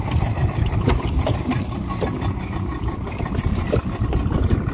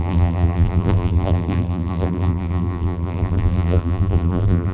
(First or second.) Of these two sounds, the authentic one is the first